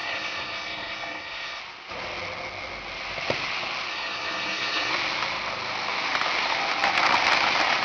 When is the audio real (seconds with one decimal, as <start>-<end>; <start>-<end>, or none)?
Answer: 1.6-3.9; 4.9-7.8